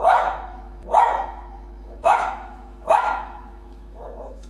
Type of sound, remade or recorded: remade